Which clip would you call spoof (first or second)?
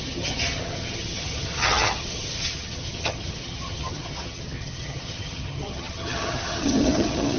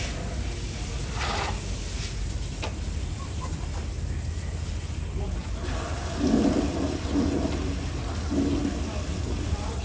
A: first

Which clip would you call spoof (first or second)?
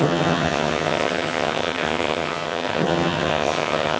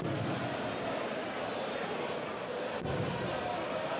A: first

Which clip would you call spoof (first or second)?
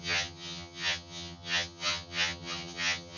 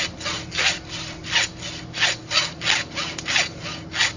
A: first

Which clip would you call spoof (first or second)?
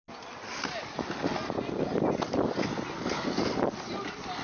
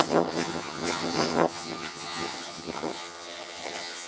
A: second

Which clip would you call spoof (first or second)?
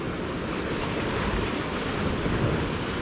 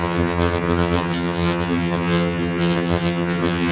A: second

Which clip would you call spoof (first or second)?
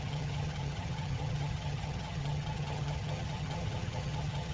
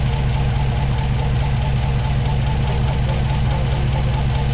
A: first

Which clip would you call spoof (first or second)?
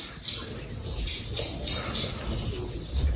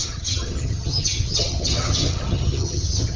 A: second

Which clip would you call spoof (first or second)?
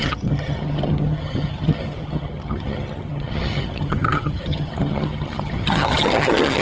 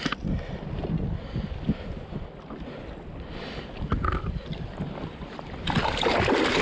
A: first